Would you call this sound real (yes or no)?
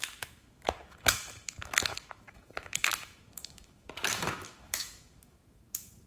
no